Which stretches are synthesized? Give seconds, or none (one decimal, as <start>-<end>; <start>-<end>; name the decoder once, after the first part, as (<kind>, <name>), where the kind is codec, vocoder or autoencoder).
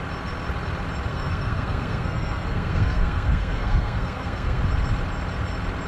1.1-4.6 (codec, SNAC)